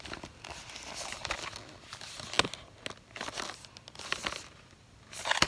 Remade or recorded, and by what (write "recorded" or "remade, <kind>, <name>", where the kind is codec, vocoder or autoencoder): recorded